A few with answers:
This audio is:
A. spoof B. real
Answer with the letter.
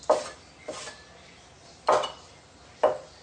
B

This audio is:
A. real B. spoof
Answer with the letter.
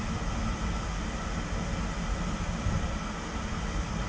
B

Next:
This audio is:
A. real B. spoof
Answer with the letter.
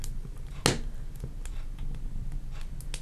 A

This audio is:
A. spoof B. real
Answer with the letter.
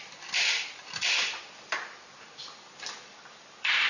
A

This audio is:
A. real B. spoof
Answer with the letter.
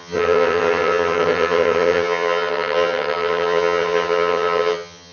B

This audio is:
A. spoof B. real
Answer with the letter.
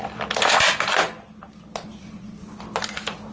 B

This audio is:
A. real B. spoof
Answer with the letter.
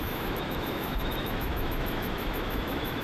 B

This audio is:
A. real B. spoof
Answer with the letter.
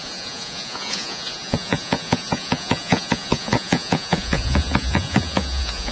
B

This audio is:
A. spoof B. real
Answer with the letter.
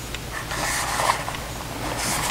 B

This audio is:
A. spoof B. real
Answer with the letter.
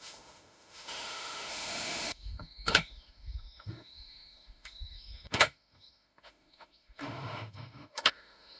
A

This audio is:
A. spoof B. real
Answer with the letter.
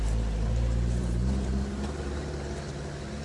B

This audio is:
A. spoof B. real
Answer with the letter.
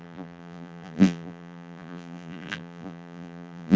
A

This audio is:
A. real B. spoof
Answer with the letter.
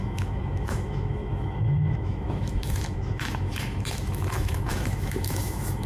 B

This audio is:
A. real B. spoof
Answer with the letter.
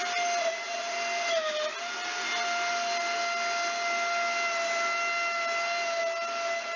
A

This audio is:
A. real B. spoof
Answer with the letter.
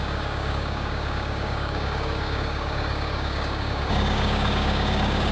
B